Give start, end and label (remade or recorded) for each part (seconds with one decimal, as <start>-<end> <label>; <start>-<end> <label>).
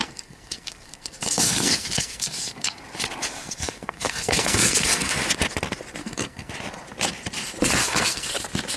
0.0-2.8 remade; 2.8-3.4 recorded; 3.4-5.1 remade; 5.1-6.0 recorded; 6.0-6.5 remade; 6.5-7.8 recorded; 7.8-8.3 remade; 8.3-8.8 recorded